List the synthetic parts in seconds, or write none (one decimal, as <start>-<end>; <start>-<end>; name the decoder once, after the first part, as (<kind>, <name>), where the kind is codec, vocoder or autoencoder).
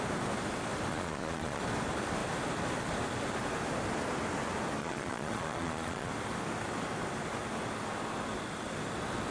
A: 0.9-1.6 (vocoder, Vocos); 4.8-6.1